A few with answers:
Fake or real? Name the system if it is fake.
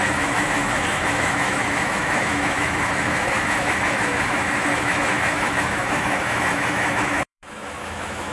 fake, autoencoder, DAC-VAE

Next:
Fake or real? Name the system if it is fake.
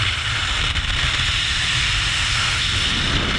real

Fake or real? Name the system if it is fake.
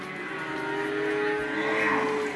real